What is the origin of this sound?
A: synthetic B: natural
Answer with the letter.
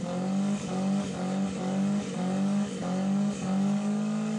A